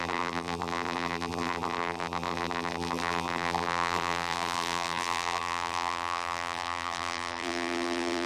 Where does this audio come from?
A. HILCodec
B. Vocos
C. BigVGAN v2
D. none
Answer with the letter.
C